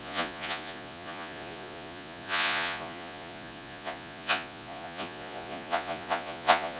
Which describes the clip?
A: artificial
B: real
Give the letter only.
A